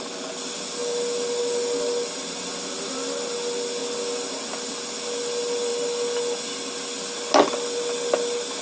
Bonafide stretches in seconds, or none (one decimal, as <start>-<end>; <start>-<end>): 0.0-8.6